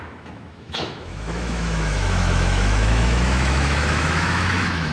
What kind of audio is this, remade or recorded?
remade